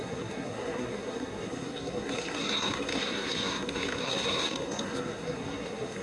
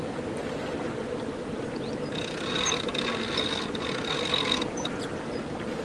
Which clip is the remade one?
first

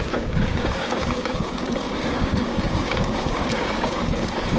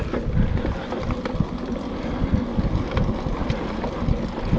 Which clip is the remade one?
first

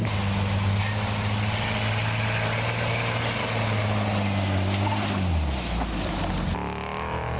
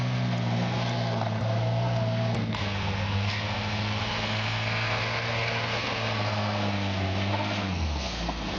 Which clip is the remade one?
second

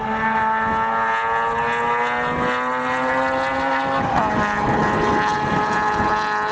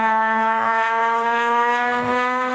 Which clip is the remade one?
second